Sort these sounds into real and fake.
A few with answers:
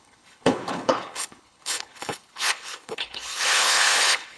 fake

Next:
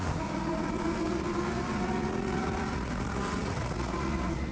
fake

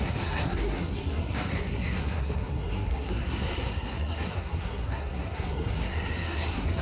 fake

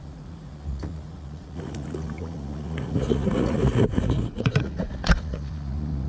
fake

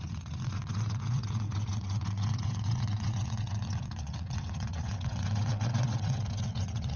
fake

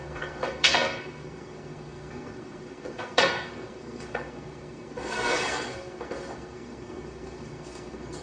fake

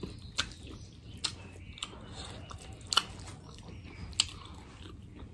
real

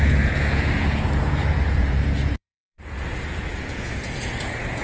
fake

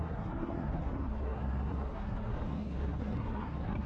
fake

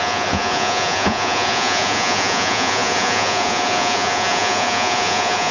fake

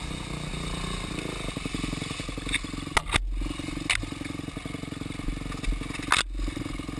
real